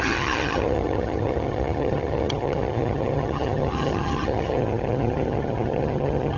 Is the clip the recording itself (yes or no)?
no